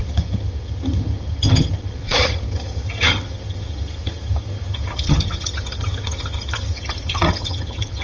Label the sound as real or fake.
fake